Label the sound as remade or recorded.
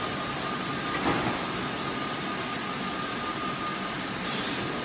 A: recorded